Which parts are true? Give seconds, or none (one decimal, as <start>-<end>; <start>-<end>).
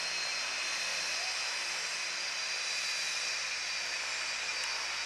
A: 0.0-5.1